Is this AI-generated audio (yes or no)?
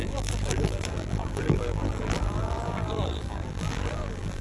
yes